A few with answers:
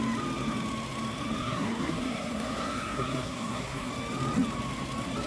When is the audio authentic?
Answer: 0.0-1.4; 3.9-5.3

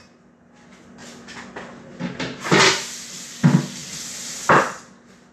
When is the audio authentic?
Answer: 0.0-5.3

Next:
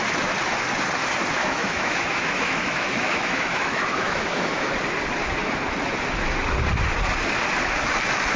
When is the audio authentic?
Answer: 0.0-1.4; 4.7-8.4

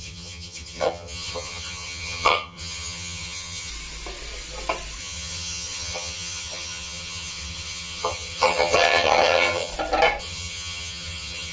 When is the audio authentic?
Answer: 3.7-5.0; 9.7-10.2